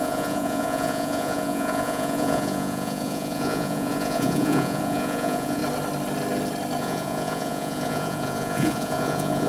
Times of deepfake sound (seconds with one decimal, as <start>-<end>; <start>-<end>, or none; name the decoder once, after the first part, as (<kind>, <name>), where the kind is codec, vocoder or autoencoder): 0.0-5.6 (vocoder, Vocos); 6.8-9.5